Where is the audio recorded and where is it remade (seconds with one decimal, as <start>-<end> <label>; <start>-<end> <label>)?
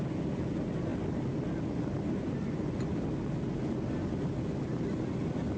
0.0-0.9 recorded; 0.9-4.3 remade; 4.3-5.6 recorded